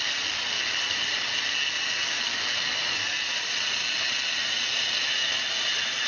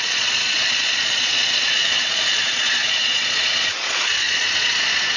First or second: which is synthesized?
second